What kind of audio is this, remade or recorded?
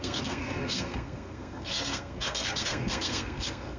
remade